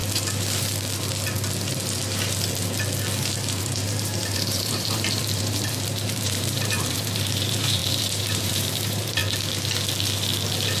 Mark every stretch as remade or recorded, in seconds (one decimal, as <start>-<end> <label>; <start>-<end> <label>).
0.0-3.6 recorded; 3.6-9.2 remade; 9.2-10.8 recorded